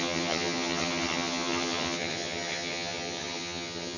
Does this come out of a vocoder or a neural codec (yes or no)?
yes